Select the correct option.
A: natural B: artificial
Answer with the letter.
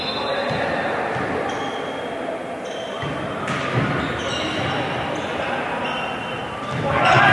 A